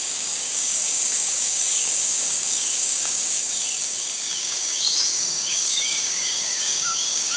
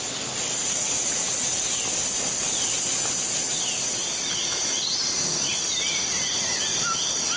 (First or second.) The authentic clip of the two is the second